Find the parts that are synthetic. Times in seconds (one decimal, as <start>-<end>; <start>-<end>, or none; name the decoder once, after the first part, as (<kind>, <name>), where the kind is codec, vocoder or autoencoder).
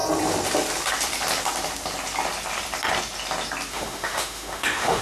3.7-5.0 (autoencoder, DAC-VAE)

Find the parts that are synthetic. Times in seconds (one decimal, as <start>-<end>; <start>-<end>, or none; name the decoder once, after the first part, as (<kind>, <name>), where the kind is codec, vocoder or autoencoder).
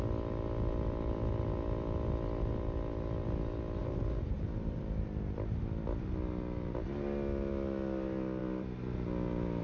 3.8-4.8 (vocoder, BigVGAN v2)